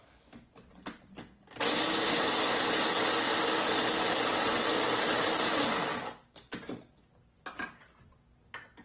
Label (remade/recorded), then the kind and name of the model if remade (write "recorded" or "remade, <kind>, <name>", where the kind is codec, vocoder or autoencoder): recorded